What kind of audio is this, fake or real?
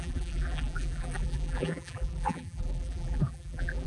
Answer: fake